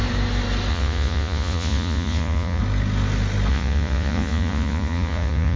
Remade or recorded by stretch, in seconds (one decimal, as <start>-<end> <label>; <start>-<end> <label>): 0.0-0.7 recorded; 0.7-2.6 remade; 2.6-3.5 recorded; 3.5-5.6 remade

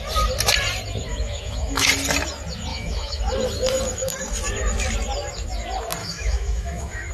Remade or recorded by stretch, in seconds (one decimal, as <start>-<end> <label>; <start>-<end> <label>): 0.0-1.1 recorded; 1.1-1.9 remade; 1.9-2.7 recorded; 2.7-3.2 remade; 3.2-6.0 recorded; 6.0-7.1 remade

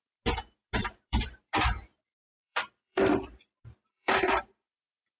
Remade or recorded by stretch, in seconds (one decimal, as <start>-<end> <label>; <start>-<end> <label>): 0.0-0.8 recorded; 0.8-1.5 remade; 1.5-1.9 recorded; 1.9-4.4 remade; 4.4-5.2 recorded

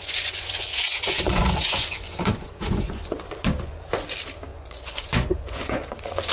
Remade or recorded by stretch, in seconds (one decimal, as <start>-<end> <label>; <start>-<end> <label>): 0.0-3.8 remade; 3.8-4.5 recorded; 4.5-6.3 remade